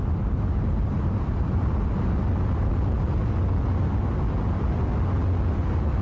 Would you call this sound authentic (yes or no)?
yes